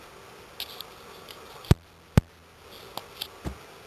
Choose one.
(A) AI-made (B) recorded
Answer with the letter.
B